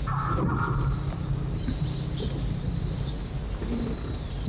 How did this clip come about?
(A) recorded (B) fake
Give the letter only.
A